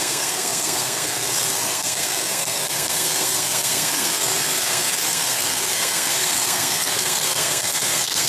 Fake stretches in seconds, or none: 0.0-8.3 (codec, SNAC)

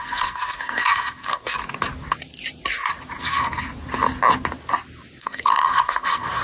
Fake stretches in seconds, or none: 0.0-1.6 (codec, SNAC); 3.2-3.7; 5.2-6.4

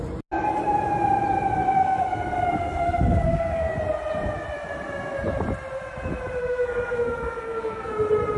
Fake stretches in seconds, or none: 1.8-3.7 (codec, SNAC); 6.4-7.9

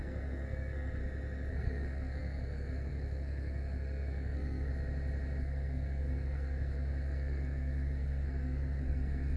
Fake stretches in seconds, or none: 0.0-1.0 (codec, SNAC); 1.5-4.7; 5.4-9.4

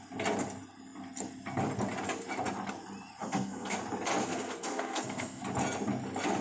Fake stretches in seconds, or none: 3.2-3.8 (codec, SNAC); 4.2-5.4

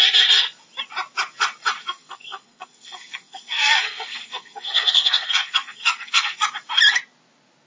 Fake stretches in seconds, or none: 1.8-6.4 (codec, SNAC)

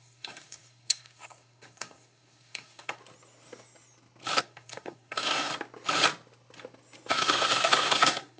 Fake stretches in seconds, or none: 0.0-3.0 (codec, SNAC); 4.4-5.5; 7.1-8.4

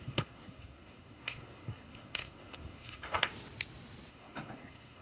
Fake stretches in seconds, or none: 0.0-3.3 (codec, SNAC); 4.1-5.0